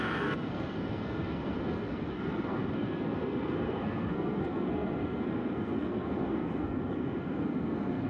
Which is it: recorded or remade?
remade